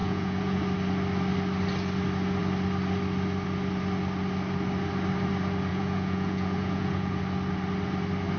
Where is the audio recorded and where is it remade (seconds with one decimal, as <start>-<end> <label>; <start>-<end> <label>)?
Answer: 0.0-0.6 remade; 0.6-5.7 recorded; 5.7-7.2 remade; 7.2-8.4 recorded